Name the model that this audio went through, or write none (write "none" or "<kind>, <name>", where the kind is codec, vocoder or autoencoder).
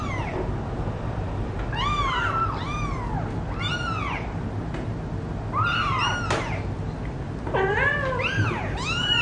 none